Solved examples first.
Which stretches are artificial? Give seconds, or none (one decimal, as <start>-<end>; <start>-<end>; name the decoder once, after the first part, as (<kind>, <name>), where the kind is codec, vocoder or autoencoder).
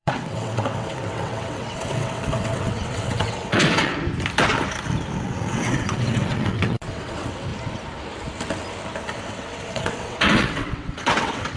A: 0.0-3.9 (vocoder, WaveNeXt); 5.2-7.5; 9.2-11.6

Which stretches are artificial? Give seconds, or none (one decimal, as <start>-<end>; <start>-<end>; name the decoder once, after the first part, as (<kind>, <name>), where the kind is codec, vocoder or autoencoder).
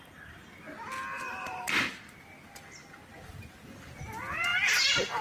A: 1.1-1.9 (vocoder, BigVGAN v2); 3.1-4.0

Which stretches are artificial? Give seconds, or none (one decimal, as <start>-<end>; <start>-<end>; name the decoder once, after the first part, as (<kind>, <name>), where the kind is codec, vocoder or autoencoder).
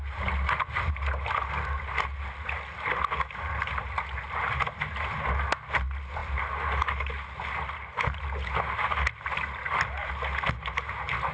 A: none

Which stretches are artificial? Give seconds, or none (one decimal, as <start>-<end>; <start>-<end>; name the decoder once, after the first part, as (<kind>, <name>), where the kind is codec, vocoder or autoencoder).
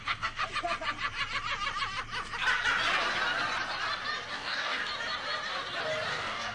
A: 0.0-0.4 (codec, DAC); 4.3-4.8; 6.1-6.5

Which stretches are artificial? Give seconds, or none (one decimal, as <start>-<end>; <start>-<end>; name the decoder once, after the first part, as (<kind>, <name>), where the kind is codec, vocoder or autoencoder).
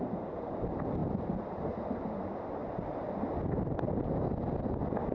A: none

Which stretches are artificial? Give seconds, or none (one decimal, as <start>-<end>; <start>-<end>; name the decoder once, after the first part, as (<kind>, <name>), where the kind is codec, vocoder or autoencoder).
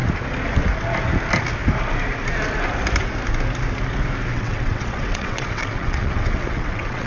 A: 4.3-7.1 (vocoder, WaveNeXt)